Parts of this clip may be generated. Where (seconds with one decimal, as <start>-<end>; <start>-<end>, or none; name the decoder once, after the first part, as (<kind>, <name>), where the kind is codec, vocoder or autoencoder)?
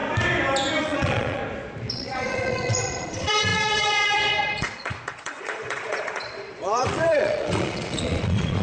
0.8-1.4 (vocoder, Vocos); 1.9-8.6